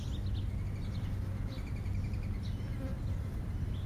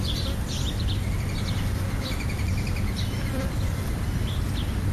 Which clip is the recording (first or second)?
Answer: first